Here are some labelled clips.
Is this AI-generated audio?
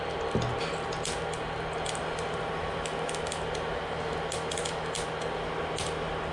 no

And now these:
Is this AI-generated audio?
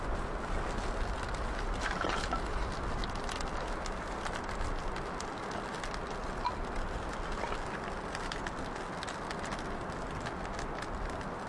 no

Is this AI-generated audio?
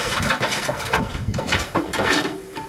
yes